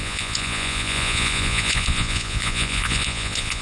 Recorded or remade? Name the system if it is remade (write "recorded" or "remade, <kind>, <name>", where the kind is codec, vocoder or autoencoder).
remade, vocoder, Vocos